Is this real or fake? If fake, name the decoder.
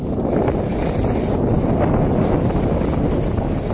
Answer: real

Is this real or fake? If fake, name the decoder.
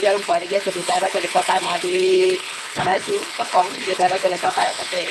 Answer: fake, codec, HILCodec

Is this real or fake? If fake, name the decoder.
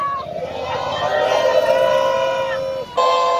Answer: real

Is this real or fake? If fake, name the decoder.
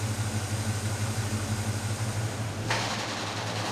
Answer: real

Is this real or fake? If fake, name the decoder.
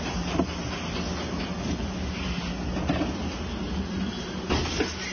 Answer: real